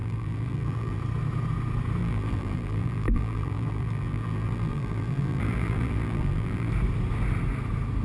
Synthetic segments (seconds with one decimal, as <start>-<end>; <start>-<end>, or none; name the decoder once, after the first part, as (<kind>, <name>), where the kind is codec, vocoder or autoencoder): 0.0-1.0 (vocoder, BigVGAN v2); 2.0-6.7

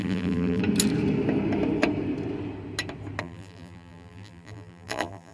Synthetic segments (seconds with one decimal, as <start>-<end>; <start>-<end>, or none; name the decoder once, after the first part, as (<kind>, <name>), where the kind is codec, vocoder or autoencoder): 0.0-0.6 (vocoder, BigVGAN v2); 3.2-5.3